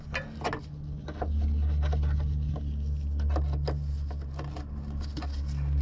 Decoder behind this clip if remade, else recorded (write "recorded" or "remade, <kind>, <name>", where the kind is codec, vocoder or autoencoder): recorded